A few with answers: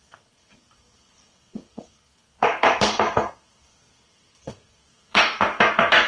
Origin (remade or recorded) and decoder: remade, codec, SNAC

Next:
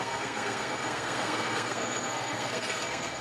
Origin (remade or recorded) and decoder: remade, codec, SNAC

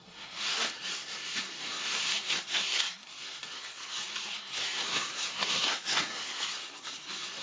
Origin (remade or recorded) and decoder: remade, codec, SNAC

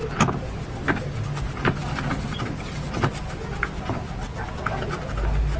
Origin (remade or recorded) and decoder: recorded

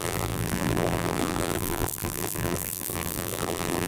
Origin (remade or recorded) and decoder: remade, vocoder, BigVGAN v2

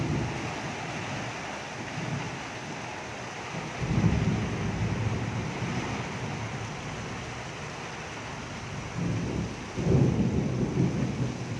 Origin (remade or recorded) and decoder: recorded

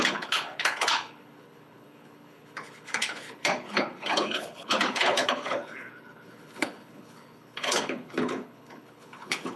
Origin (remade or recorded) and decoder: remade, codec, HILCodec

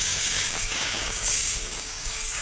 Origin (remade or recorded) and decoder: remade, codec, DAC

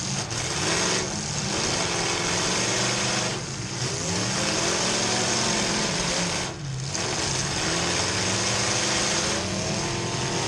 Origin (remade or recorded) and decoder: recorded